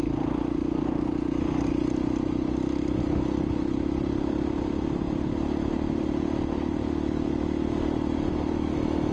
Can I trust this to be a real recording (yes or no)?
yes